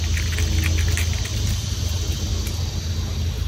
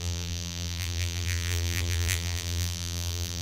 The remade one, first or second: second